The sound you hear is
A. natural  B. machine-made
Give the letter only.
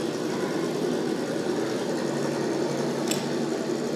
A